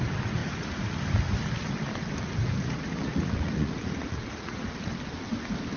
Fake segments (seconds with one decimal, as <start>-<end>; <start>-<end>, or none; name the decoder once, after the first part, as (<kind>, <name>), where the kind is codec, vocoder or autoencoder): 0.4-1.0 (vocoder, Vocos); 2.4-4.9